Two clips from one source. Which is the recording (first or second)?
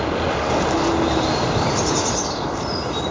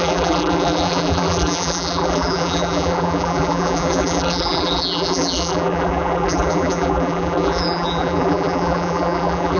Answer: first